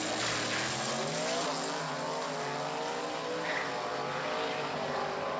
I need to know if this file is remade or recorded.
recorded